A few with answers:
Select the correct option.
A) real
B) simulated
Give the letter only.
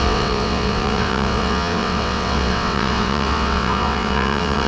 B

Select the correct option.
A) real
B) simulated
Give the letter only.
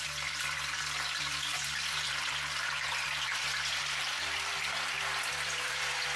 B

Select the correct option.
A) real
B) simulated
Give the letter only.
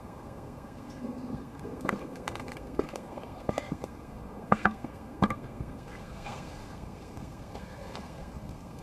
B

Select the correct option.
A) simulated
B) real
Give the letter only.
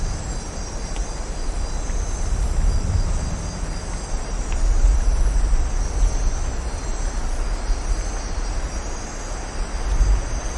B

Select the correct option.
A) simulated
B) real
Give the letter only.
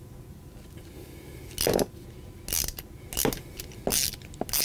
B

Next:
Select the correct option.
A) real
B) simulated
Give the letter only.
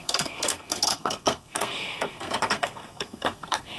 B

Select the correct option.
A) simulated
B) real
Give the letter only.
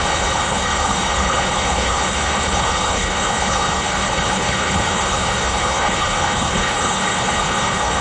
A